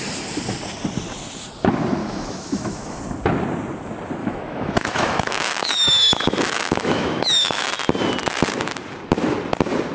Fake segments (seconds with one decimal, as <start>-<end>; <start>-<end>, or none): 2.0-3.0; 4.2-7.7